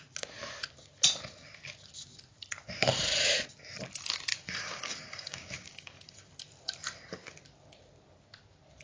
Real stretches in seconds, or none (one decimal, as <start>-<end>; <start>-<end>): 0.0-4.3; 6.3-8.8